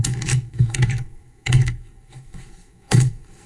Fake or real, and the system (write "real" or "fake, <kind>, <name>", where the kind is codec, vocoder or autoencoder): fake, codec, SNAC